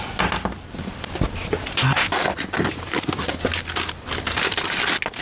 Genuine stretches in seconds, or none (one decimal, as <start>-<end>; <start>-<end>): 0.0-5.2